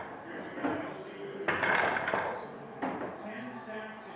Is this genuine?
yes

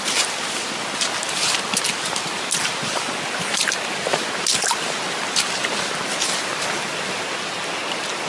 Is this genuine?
yes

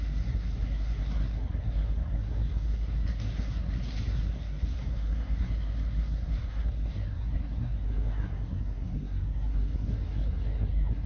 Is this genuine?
no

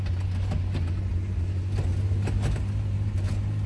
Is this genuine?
yes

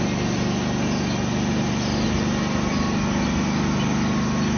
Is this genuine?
yes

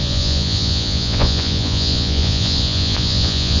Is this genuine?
no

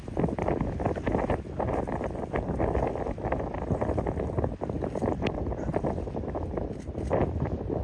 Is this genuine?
yes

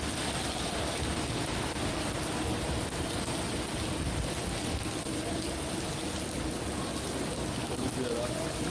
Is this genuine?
yes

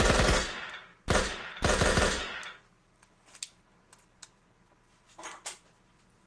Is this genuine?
yes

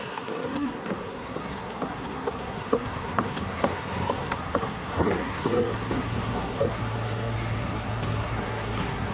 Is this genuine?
no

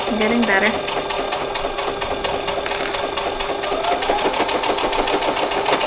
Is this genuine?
yes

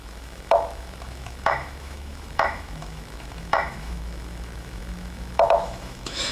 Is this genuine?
no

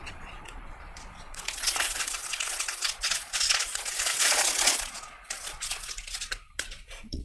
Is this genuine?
no